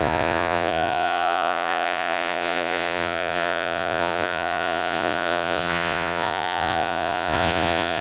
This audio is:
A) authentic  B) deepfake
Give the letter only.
B